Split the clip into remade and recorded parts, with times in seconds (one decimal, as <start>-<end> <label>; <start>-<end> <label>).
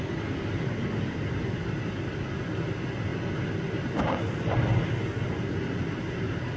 0.0-6.6 recorded